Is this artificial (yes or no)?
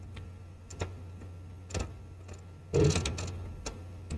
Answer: no